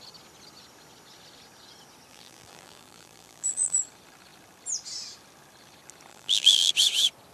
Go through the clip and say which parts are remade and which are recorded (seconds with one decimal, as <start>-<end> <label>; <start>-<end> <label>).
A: 0.0-2.1 recorded; 2.1-3.8 remade; 3.8-6.1 recorded; 6.1-6.7 remade; 6.7-7.3 recorded